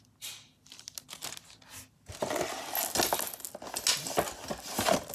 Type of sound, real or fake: real